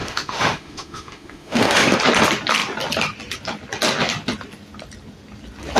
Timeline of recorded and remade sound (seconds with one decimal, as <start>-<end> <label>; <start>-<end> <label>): 0.0-2.0 remade; 2.0-5.8 recorded